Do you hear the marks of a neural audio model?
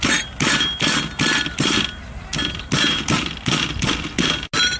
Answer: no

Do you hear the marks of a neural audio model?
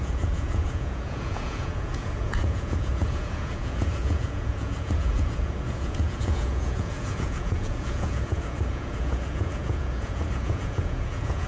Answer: yes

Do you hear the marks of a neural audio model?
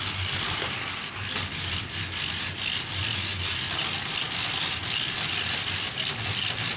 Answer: no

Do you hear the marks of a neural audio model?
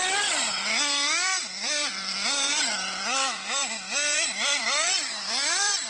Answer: yes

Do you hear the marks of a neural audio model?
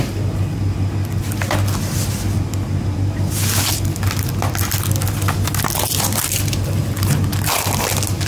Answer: no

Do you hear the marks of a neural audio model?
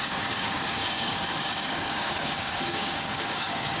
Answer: yes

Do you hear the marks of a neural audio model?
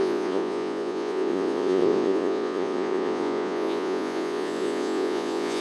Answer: yes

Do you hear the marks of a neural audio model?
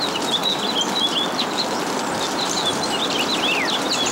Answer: yes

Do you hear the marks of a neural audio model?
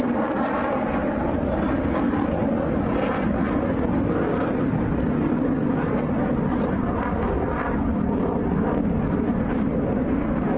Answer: no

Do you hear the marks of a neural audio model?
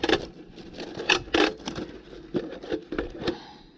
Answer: no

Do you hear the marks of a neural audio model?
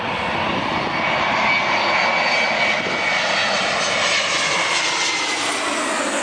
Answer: no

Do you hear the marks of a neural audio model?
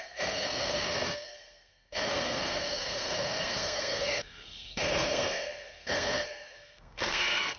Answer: yes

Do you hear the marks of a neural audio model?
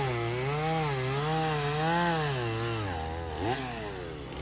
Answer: no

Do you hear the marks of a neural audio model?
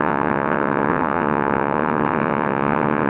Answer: yes